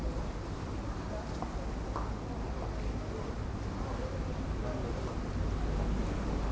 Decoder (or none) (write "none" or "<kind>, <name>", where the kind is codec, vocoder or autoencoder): none